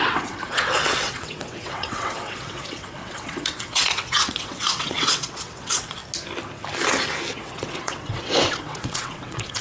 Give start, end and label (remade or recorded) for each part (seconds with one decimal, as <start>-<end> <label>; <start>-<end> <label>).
0.0-6.0 remade; 6.0-7.4 recorded; 7.4-9.6 remade